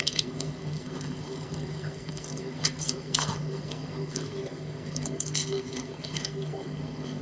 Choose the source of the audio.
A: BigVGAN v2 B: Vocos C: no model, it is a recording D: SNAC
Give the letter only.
D